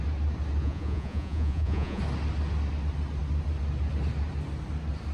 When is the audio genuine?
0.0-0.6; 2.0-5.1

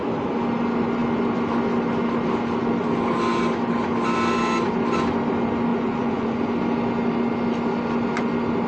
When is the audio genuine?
0.0-5.7; 6.4-8.7

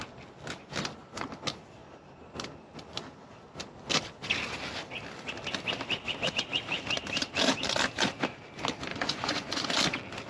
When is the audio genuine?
0.0-8.9; 9.8-10.3

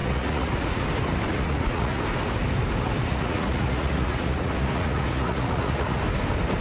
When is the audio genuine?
0.8-1.3; 2.0-3.1; 6.0-6.6